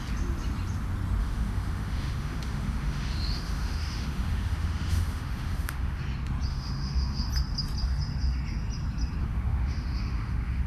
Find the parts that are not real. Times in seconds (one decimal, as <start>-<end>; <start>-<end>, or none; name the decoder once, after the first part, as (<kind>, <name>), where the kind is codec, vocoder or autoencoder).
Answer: 1.2-6.0 (autoencoder, DAC-VAE); 6.5-7.3; 9.2-10.7